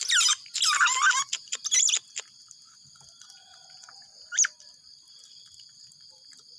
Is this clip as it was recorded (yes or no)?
yes